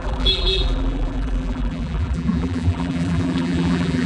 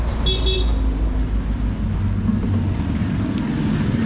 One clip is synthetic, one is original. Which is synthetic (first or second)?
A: first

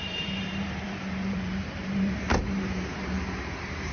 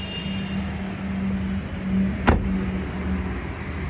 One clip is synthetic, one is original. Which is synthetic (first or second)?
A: first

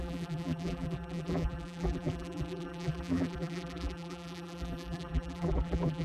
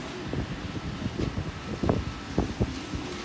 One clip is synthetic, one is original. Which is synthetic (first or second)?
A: first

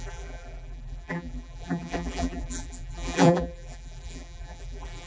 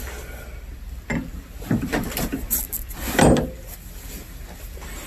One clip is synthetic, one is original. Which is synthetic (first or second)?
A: first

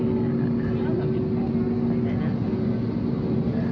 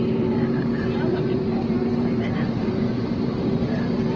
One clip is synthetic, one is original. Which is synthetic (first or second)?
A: second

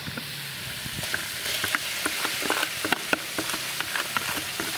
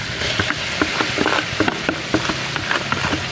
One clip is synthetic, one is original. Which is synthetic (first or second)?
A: first